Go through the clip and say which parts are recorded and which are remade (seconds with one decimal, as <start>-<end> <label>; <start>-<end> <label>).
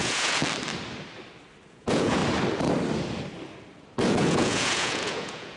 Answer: 0.0-0.4 remade; 0.4-1.7 recorded; 1.7-2.2 remade; 2.2-4.2 recorded; 4.2-5.6 remade